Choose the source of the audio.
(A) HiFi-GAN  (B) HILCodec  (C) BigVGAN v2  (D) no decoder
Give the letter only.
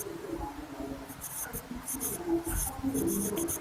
D